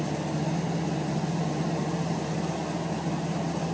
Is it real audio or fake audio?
real